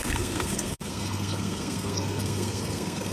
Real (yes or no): no